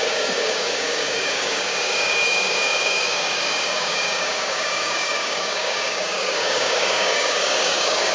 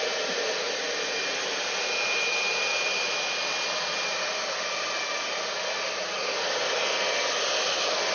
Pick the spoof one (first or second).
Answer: first